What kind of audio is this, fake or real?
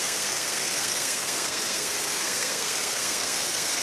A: fake